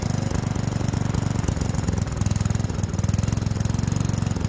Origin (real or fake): real